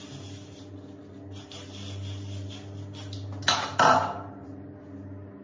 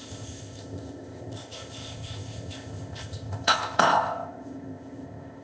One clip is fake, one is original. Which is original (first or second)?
first